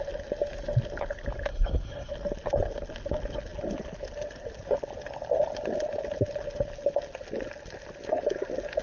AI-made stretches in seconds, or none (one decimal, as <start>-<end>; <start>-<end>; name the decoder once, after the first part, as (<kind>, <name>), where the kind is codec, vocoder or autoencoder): 1.5-2.1 (codec, HILCodec)